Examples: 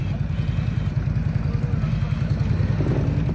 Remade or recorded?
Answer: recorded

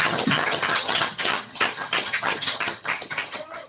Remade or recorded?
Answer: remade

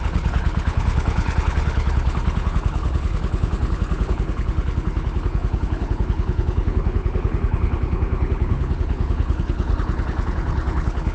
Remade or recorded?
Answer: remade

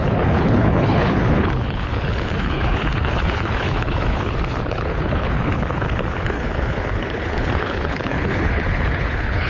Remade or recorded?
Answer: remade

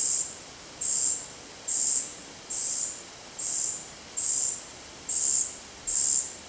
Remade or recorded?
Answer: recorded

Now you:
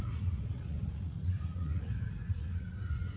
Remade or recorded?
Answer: remade